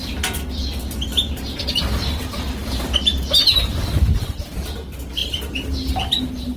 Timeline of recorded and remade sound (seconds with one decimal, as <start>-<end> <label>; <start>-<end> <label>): 0.0-1.1 recorded; 1.1-1.8 remade; 1.8-2.6 recorded; 2.6-3.7 remade; 3.7-6.6 recorded